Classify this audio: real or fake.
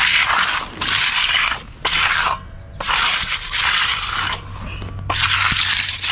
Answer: real